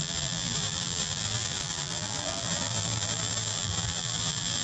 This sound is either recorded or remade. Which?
remade